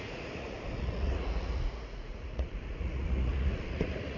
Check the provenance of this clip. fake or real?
fake